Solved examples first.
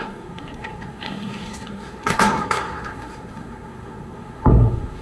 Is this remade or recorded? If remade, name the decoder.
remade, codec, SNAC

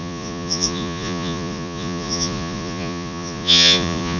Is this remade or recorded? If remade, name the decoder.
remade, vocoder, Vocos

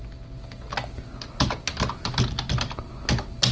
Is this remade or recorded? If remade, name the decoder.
recorded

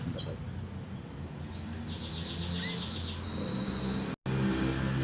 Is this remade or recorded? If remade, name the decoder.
recorded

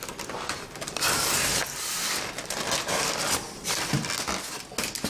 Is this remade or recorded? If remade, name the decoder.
recorded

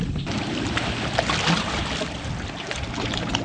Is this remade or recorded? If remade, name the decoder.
recorded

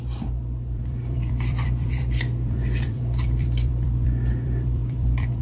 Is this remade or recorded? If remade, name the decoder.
remade, vocoder, BigVGAN v2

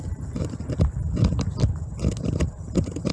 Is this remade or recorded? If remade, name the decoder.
recorded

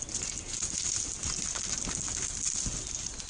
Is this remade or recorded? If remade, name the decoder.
recorded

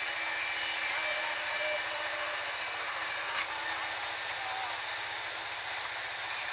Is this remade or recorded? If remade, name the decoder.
recorded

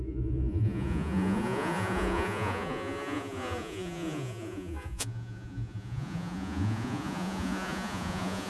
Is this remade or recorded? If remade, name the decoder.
remade, vocoder, Vocos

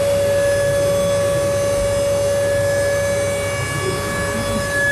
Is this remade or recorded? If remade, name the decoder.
recorded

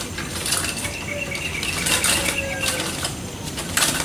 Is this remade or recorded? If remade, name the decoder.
remade, vocoder, BigVGAN v2